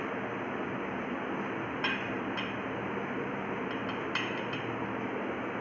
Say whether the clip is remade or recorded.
recorded